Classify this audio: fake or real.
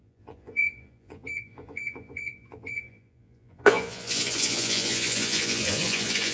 fake